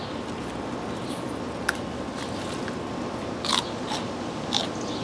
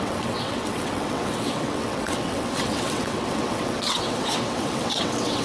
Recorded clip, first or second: first